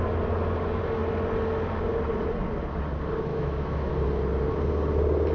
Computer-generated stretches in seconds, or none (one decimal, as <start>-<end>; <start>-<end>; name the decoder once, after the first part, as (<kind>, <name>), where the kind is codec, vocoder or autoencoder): 3.3-3.9 (autoencoder, DAC-VAE)